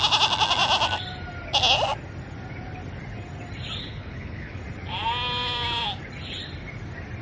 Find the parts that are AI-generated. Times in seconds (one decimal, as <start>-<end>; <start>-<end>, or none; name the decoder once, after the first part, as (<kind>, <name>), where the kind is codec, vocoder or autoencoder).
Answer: 3.8-4.6 (codec, HILCodec)